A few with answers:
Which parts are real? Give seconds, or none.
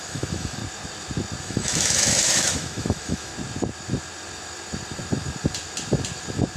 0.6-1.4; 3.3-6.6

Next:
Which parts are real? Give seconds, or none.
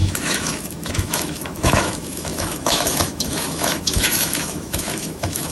none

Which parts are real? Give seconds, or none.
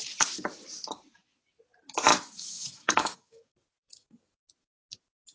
0.0-2.1; 3.5-5.3